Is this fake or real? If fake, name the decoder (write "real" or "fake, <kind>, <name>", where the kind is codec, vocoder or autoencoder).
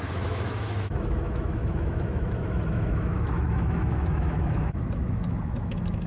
fake, autoencoder, DAC-VAE